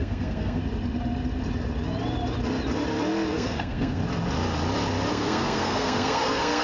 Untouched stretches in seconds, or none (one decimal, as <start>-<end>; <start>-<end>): 0.6-3.3; 4.0-5.1